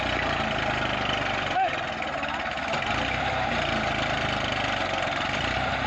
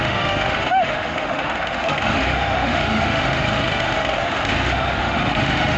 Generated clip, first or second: second